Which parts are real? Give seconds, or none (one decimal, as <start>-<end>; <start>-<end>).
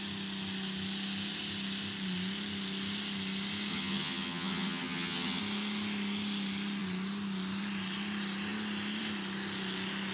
0.0-3.7; 5.4-10.1